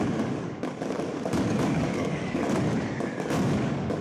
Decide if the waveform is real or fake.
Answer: fake